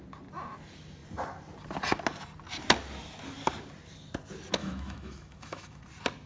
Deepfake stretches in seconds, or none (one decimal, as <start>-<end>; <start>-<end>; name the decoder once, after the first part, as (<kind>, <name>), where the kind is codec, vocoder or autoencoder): 4.6-5.8 (autoencoder, DAC-VAE)